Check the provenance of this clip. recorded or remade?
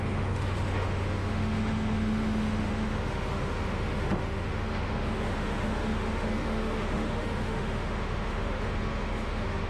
remade